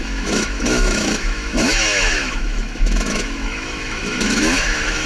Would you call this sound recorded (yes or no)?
no